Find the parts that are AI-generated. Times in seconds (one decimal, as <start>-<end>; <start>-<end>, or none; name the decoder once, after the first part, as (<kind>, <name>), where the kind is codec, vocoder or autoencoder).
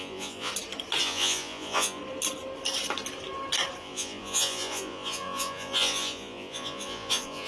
0.0-0.5 (vocoder, Vocos); 1.0-2.0; 3.8-7.5